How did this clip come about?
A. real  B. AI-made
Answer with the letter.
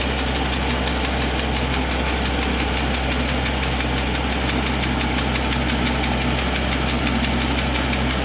A